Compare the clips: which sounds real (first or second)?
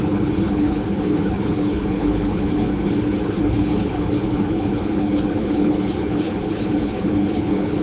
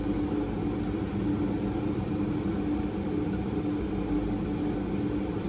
second